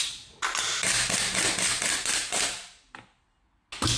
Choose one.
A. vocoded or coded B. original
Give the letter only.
B